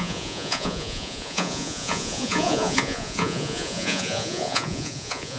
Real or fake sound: fake